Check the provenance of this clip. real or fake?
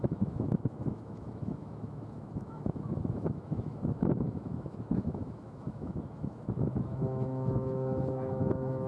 fake